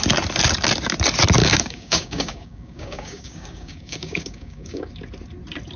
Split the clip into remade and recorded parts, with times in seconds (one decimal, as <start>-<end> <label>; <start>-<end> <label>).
0.0-1.4 recorded; 1.4-4.9 remade; 4.9-5.8 recorded